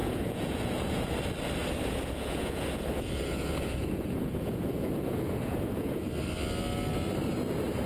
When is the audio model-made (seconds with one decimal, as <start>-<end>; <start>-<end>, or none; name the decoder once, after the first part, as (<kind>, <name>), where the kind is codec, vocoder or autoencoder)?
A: 0.0-1.1 (vocoder, Vocos); 1.6-6.0